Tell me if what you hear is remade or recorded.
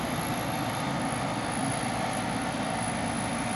recorded